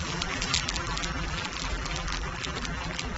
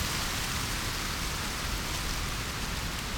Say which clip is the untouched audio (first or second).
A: second